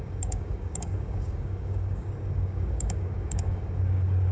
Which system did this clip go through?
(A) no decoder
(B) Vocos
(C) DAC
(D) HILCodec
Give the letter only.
C